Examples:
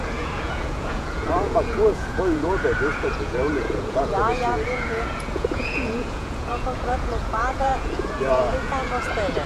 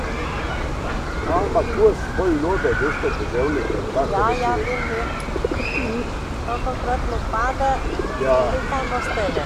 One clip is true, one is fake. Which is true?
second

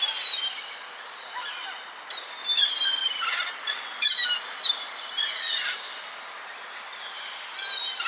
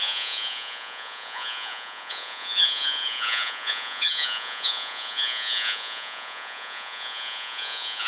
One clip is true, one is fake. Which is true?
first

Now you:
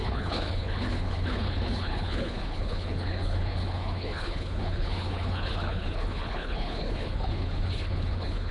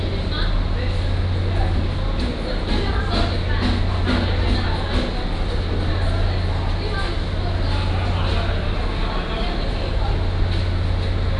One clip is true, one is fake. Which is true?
second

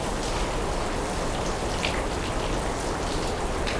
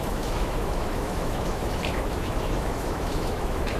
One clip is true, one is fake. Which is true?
first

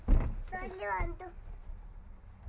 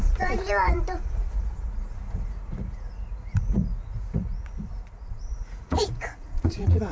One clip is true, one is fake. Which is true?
first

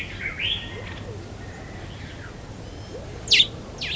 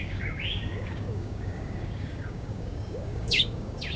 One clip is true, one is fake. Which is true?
first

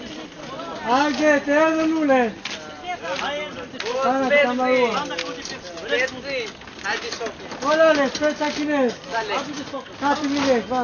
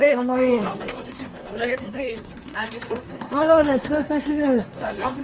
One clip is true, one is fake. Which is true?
first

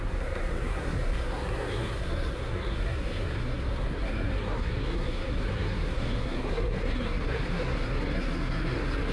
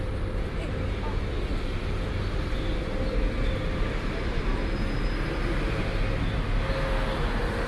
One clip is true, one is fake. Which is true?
second